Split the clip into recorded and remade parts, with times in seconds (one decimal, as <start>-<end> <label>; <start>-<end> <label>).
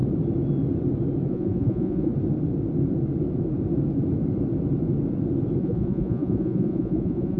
0.0-1.3 recorded; 1.3-2.1 remade; 2.1-5.6 recorded; 5.6-7.4 remade